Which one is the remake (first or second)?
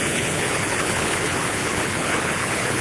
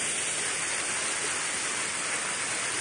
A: first